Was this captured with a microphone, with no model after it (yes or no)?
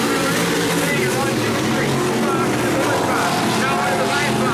yes